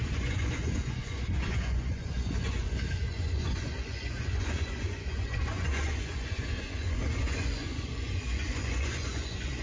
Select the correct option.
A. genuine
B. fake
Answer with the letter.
B